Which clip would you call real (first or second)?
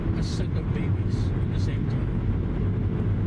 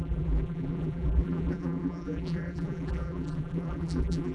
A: first